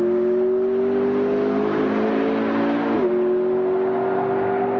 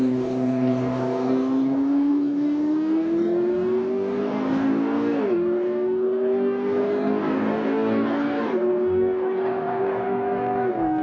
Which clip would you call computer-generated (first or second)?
second